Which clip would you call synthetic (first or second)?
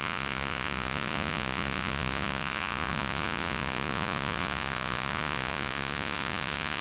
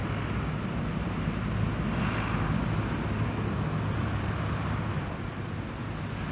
first